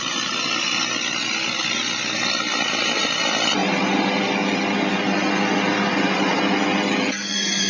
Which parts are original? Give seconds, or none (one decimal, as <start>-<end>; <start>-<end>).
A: 0.0-3.6; 4.3-5.9; 6.4-7.7